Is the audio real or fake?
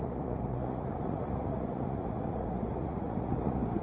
fake